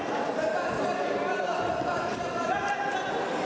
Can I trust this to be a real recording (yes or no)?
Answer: yes